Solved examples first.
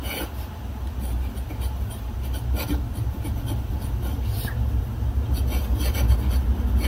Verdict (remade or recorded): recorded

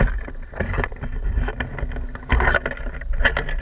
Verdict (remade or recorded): recorded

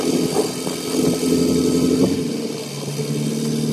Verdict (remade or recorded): recorded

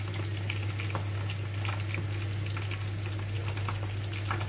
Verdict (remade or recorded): recorded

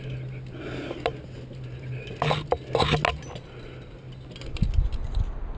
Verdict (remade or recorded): recorded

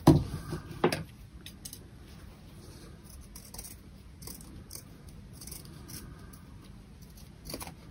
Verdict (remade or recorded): recorded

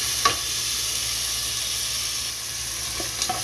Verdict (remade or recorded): recorded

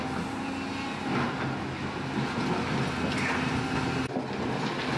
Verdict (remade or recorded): recorded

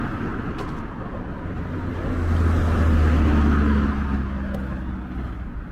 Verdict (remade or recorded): recorded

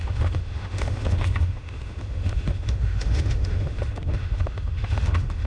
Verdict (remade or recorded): remade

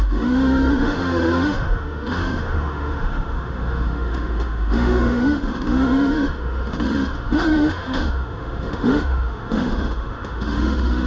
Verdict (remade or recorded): remade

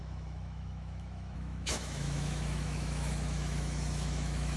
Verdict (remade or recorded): remade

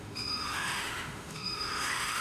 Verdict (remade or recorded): remade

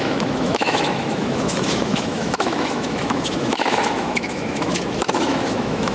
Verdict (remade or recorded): remade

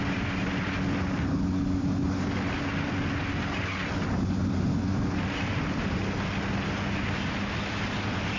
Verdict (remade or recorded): recorded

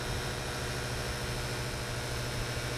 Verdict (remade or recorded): recorded